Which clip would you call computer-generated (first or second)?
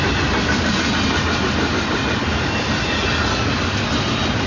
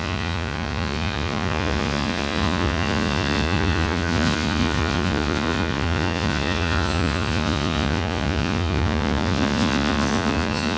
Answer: second